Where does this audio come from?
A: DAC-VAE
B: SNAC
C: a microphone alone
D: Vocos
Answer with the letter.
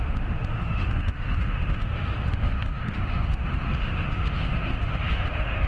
A